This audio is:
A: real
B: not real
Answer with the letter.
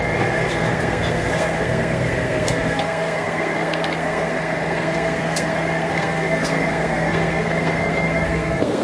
B